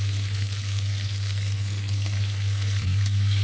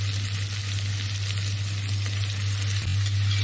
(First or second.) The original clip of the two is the second